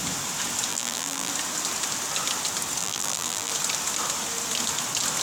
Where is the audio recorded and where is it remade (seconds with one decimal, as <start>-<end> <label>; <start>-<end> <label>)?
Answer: 0.0-0.7 recorded; 0.7-1.3 remade; 1.3-2.8 recorded; 2.8-3.5 remade; 3.5-5.2 recorded